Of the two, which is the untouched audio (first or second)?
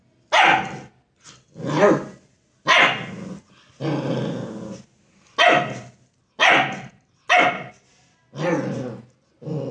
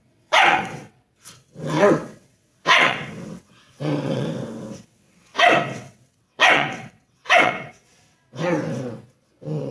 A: first